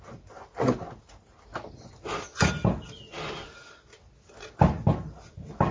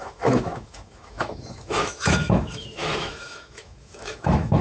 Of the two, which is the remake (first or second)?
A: second